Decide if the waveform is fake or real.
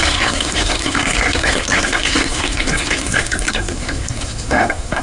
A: fake